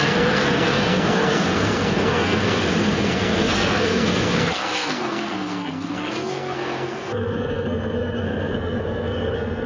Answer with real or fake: fake